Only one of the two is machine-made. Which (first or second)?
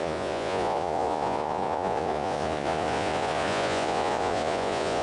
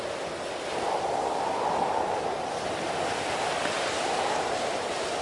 first